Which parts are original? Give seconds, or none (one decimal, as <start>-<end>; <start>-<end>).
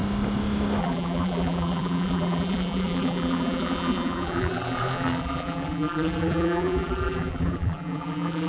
0.0-0.8